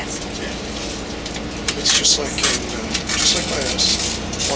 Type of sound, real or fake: real